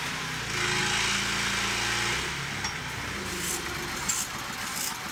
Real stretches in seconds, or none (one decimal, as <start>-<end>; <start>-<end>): 0.0-5.1